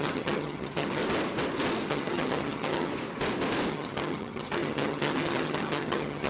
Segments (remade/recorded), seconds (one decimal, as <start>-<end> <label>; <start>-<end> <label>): 0.0-1.0 remade; 1.0-1.9 recorded; 1.9-2.9 remade; 2.9-3.7 recorded; 3.7-6.3 remade